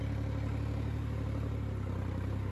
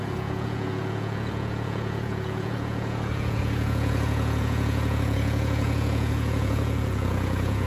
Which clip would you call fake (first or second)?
second